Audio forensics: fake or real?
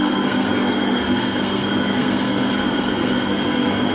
fake